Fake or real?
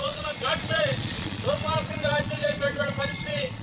fake